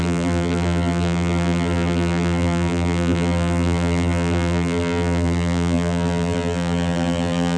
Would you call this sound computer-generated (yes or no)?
yes